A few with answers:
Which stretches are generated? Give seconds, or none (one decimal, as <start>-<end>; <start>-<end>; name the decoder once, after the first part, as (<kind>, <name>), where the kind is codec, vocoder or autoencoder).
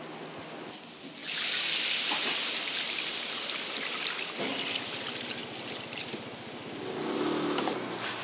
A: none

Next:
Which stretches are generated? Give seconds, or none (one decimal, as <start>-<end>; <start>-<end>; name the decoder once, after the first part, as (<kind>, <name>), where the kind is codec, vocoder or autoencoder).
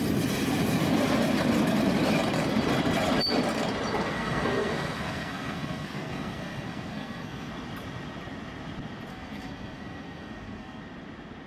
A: 4.0-7.5 (codec, SNAC); 9.1-10.8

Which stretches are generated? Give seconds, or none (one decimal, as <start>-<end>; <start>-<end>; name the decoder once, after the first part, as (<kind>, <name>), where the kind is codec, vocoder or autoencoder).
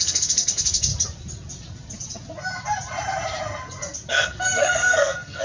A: 0.0-0.9 (codec, SNAC); 4.1-5.4